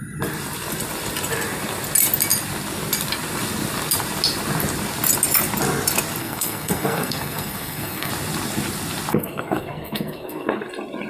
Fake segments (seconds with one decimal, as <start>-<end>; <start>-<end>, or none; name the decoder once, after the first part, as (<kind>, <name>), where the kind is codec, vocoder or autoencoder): 6.2-8.1 (codec, SNAC); 9.1-10.7